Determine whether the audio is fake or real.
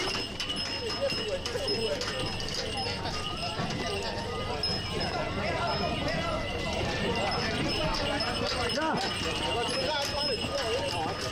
real